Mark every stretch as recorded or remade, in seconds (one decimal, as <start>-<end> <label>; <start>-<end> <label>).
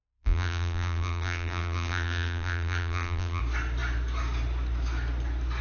0.0-3.4 remade; 3.4-5.6 recorded